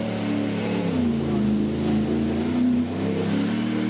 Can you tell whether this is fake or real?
real